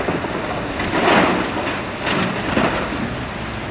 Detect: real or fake real